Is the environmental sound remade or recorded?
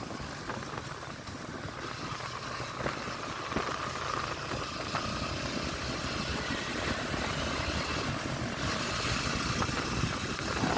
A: recorded